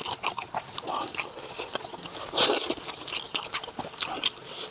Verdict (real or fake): real